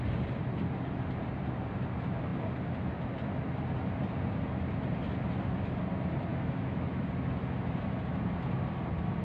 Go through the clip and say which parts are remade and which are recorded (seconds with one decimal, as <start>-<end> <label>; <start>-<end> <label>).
0.0-6.3 recorded; 6.3-7.0 remade; 7.0-9.2 recorded